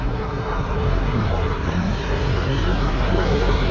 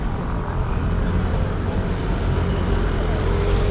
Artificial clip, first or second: first